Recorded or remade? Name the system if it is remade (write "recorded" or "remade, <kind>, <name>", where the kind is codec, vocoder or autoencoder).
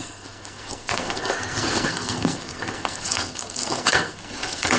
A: remade, codec, SNAC